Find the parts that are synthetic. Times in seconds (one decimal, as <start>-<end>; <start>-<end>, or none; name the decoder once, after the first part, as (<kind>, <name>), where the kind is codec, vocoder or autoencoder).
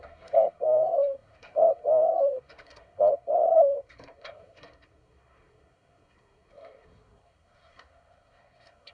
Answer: 0.0-8.9 (codec, SNAC)